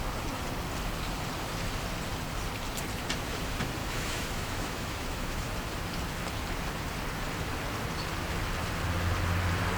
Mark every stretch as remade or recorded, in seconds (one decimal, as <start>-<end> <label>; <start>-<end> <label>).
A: 0.0-3.8 recorded; 3.8-5.5 remade; 5.5-9.8 recorded

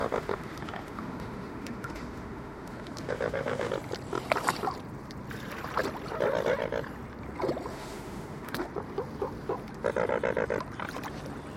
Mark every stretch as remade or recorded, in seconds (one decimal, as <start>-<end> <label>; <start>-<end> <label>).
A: 0.0-3.7 remade; 3.7-7.7 recorded; 7.7-8.7 remade; 8.7-11.6 recorded

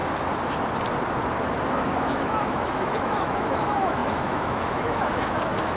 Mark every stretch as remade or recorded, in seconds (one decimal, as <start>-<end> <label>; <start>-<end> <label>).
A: 0.0-1.7 recorded; 1.7-5.8 remade

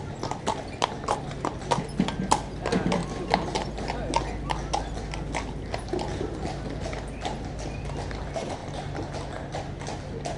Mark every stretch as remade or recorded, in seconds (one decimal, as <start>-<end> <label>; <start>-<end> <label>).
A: 0.0-10.4 recorded